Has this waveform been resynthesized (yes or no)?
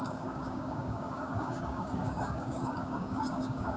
yes